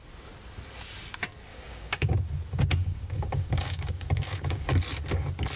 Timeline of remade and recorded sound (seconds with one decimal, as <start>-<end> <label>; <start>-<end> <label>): 0.0-1.5 recorded; 1.5-2.1 remade; 2.1-2.8 recorded; 2.8-4.8 remade; 4.8-5.6 recorded